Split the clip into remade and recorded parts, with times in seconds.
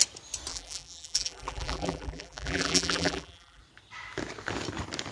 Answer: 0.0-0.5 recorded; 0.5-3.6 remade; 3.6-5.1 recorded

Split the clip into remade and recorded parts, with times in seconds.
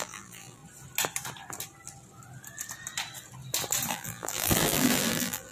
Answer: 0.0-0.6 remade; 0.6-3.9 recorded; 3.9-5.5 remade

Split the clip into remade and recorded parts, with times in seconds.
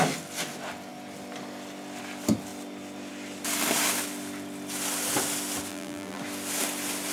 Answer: 0.0-5.7 recorded; 5.7-6.2 remade; 6.2-7.1 recorded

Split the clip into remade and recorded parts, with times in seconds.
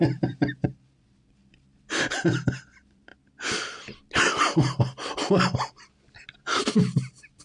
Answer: 0.0-3.1 remade; 3.1-6.7 recorded; 6.7-7.4 remade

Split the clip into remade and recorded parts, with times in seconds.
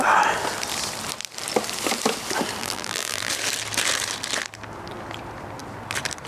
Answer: 0.0-2.6 recorded; 2.6-3.3 remade; 3.3-6.3 recorded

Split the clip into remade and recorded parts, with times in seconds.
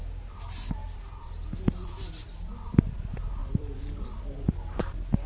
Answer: 0.0-0.8 recorded; 0.8-3.0 remade; 3.0-3.4 recorded; 3.4-4.2 remade; 4.2-5.3 recorded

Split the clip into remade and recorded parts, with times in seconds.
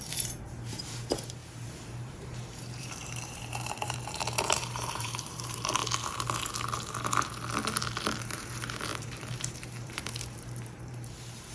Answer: 0.0-5.8 remade; 5.8-8.2 recorded; 8.2-11.5 remade